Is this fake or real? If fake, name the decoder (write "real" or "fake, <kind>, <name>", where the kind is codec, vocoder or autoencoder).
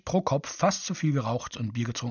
real